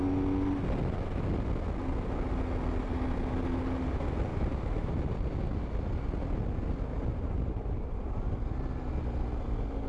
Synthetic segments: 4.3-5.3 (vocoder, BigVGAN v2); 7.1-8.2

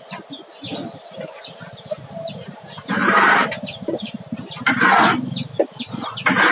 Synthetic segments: 0.7-4.6 (vocoder, BigVGAN v2)

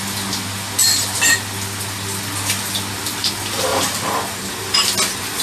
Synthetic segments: 3.7-4.5 (vocoder, BigVGAN v2)